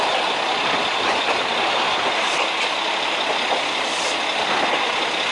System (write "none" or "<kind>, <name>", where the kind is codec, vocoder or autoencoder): none